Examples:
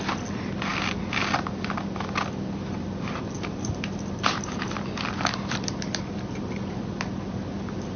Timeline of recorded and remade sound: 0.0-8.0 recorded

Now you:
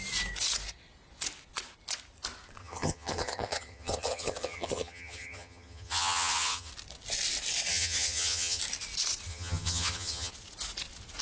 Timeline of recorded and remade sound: 0.0-2.6 recorded; 2.6-6.7 remade; 6.7-7.7 recorded; 7.7-8.6 remade; 8.6-9.3 recorded; 9.3-10.3 remade; 10.3-11.2 recorded